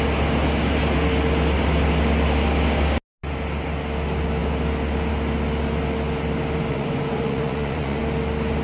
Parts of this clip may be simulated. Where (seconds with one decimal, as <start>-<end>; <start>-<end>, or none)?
6.7-8.0